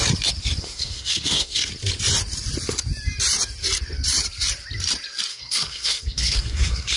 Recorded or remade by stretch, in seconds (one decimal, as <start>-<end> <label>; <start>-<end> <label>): 0.0-0.6 recorded; 0.6-1.7 remade; 1.7-5.3 recorded; 5.3-7.0 remade